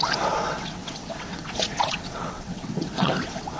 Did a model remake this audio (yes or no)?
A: yes